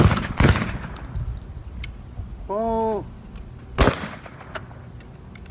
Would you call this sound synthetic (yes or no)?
no